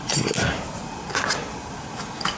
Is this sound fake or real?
real